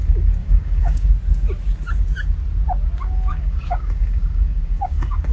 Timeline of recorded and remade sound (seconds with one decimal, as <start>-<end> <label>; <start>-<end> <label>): 0.0-0.4 recorded; 0.4-1.1 remade; 1.1-3.3 recorded; 3.3-5.3 remade